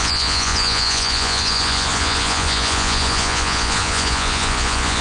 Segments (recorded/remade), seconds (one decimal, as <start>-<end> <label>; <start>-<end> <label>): 0.0-5.0 remade